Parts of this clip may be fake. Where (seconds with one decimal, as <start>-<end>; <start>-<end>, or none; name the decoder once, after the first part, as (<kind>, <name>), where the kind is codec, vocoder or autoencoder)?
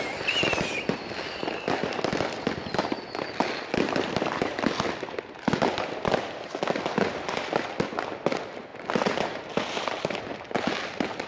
none